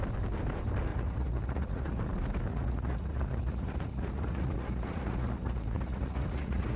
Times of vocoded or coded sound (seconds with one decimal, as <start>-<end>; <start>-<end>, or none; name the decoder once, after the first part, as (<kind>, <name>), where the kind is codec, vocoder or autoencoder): 0.9-2.0 (vocoder, Vocos); 2.5-6.8